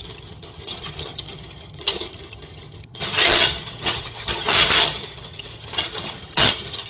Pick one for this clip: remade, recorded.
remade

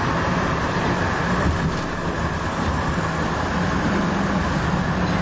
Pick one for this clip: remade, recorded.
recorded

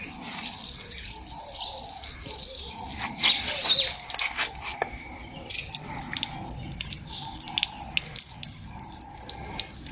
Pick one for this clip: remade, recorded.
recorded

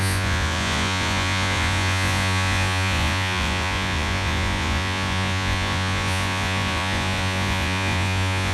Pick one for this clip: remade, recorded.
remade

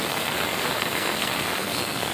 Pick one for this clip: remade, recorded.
remade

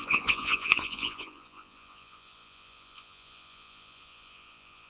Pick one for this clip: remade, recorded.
remade